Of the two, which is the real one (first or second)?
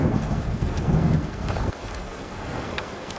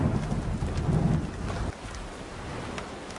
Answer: second